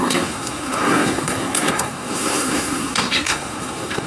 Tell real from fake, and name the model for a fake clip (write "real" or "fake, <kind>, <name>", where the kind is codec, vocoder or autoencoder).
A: fake, codec, SNAC